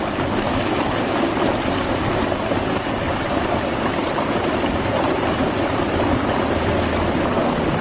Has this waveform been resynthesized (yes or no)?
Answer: no